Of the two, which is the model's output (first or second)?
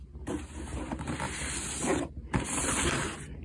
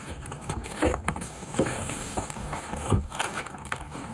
second